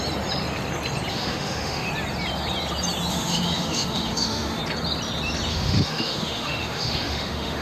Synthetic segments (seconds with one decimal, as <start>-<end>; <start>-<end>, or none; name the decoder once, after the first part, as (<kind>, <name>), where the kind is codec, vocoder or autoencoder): 1.1-1.9 (autoencoder, DAC-VAE); 3.1-4.6; 5.5-7.6